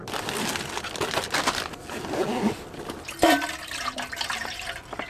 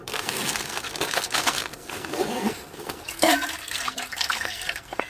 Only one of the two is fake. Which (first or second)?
second